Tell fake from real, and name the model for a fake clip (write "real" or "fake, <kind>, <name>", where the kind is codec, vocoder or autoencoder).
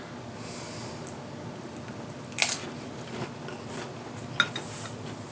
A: real